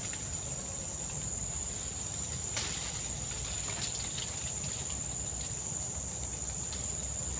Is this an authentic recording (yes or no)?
no